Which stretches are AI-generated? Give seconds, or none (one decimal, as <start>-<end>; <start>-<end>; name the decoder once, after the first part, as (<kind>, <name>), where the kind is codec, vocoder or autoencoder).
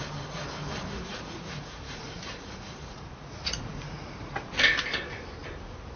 1.1-4.5 (vocoder, Vocos)